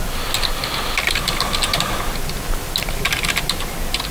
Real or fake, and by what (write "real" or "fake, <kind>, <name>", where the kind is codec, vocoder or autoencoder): real